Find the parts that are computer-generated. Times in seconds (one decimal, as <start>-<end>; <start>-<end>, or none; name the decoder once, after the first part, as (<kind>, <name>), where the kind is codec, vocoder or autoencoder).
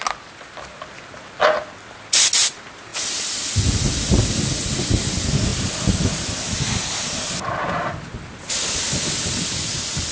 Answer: none